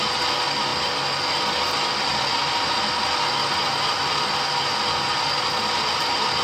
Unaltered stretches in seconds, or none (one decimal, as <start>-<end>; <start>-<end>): 0.0-6.4